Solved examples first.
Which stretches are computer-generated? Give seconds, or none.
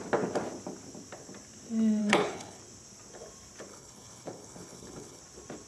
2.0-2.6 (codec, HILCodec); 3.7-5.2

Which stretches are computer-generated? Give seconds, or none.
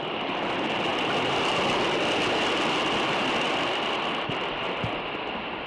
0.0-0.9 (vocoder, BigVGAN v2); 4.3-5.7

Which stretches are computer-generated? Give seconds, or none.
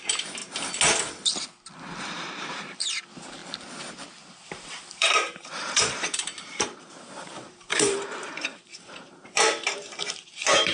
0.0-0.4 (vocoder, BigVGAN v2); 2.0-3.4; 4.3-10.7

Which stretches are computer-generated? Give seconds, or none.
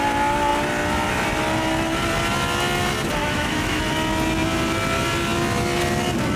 3.2-3.8 (autoencoder, DAC-VAE)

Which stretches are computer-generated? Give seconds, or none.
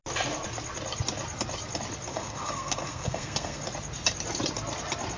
2.1-3.6 (codec, SNAC)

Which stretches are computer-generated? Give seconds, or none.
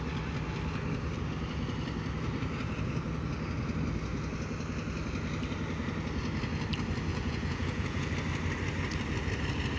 7.1-8.1 (vocoder, Vocos)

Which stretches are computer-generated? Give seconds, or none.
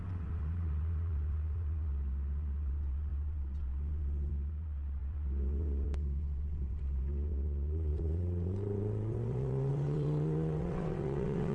0.0-11.5 (vocoder, WaveNeXt)